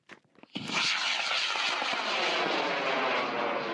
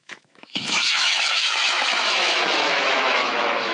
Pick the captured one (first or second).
first